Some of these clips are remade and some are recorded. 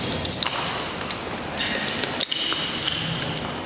recorded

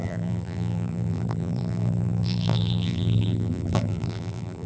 remade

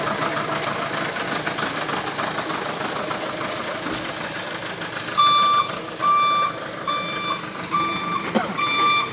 recorded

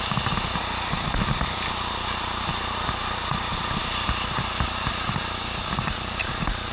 recorded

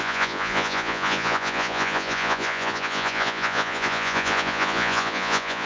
remade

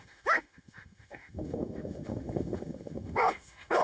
remade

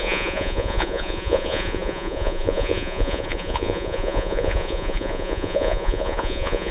remade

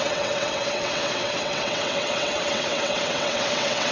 remade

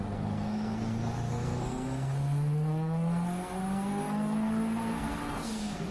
remade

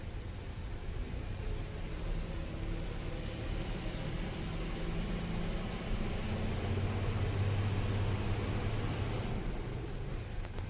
recorded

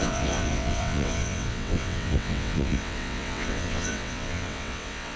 remade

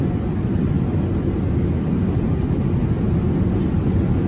recorded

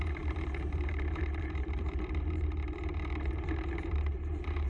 remade